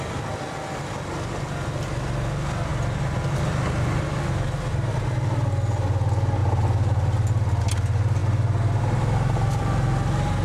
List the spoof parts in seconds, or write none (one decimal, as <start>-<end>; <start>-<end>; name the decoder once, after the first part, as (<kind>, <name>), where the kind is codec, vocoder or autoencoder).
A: none

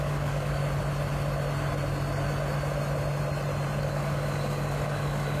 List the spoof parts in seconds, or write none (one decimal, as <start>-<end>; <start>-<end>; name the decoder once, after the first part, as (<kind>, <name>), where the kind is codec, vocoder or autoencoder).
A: 0.0-0.6 (codec, DAC); 3.8-5.4

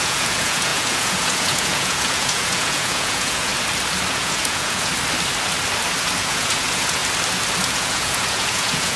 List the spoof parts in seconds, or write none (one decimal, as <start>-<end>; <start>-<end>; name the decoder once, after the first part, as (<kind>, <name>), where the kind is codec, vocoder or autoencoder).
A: 0.0-3.5 (vocoder, Vocos); 4.1-4.9; 6.2-7.0; 7.6-9.0

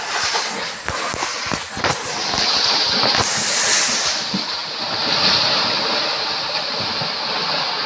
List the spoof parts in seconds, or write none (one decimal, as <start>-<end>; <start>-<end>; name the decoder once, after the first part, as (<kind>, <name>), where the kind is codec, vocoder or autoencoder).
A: none

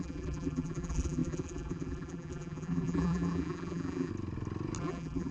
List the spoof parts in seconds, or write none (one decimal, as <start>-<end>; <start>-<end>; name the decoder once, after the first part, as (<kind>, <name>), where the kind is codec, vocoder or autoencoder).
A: 0.0-4.1 (vocoder, BigVGAN v2); 4.8-5.3

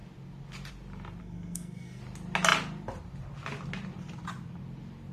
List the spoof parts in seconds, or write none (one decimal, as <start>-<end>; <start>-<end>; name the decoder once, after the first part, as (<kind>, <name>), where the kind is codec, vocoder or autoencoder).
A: 1.2-2.0 (codec, SNAC)